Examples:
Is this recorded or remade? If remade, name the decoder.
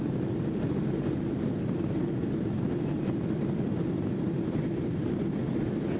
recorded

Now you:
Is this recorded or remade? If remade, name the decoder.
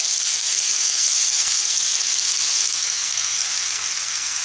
remade, codec, SNAC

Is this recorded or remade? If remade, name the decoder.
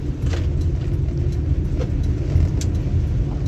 recorded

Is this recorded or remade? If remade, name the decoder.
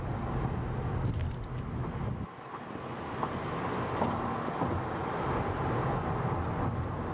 recorded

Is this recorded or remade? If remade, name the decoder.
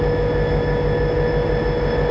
recorded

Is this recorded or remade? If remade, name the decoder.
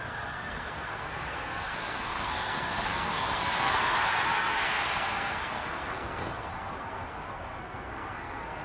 remade, codec, SNAC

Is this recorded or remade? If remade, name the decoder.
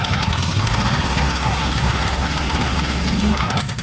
remade, codec, SNAC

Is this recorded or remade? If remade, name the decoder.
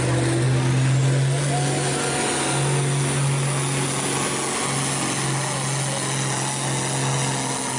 recorded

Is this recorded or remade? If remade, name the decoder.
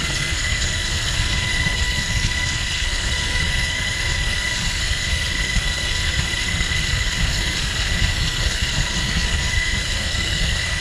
remade, codec, SNAC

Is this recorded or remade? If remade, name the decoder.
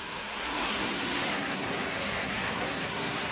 remade, codec, SNAC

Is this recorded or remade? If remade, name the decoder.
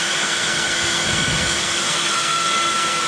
remade, codec, SNAC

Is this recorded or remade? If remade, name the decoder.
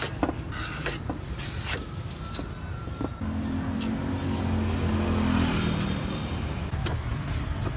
recorded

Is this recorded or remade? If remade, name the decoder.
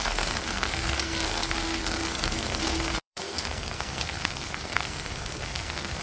remade, codec, SNAC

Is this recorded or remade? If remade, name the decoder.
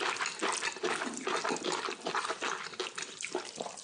recorded